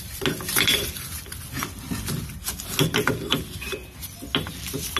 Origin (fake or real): real